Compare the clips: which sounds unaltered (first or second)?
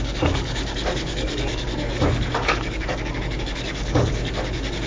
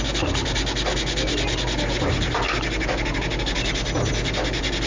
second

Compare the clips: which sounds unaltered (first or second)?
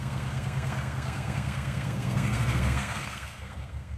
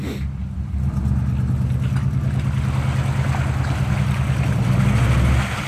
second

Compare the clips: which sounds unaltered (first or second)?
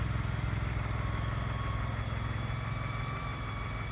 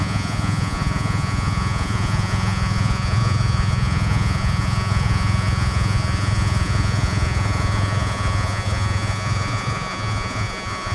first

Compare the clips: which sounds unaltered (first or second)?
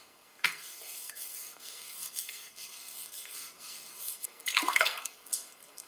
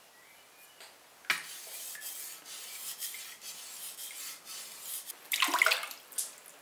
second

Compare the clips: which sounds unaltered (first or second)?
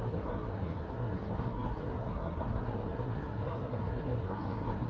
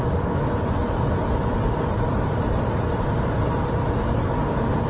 second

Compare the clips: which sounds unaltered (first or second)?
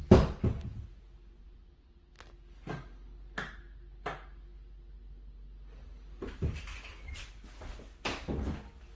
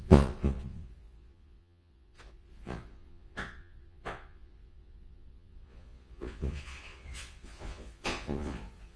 first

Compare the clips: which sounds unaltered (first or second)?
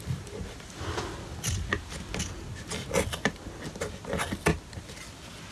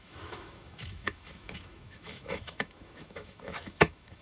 first